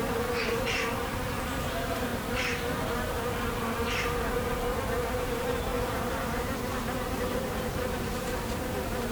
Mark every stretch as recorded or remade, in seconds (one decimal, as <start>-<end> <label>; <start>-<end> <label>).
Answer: 0.0-2.1 remade; 2.1-5.2 recorded; 5.2-9.1 remade